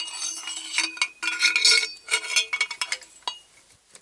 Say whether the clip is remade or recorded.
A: recorded